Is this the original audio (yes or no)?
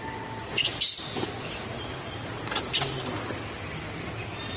yes